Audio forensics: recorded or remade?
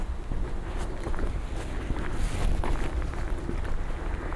recorded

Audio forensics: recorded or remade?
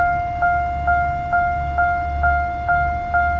recorded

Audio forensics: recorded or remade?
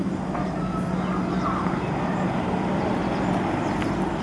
recorded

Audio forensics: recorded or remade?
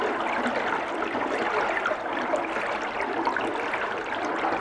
recorded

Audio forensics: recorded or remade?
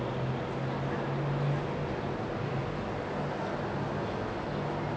recorded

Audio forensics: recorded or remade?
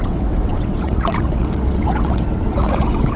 remade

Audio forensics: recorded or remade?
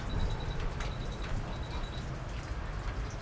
recorded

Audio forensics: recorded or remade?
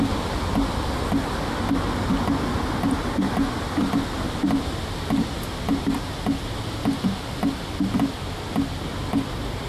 recorded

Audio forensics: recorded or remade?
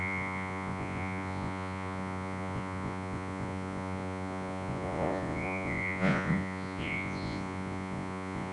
remade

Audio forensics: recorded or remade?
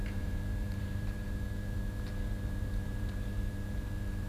remade